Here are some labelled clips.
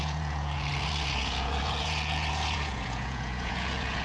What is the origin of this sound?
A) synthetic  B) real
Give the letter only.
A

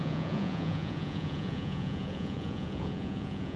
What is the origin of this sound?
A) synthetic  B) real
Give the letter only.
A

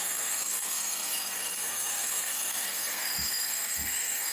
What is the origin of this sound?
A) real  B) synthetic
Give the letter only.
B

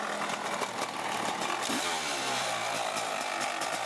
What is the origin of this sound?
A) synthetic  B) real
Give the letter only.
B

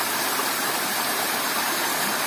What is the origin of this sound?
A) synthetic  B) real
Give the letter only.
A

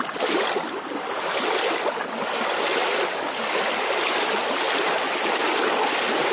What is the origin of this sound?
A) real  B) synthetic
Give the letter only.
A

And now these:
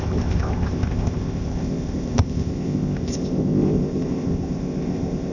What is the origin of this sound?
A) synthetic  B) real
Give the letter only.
A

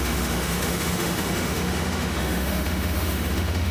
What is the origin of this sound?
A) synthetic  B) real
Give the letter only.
A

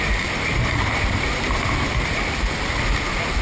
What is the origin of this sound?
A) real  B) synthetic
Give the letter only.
A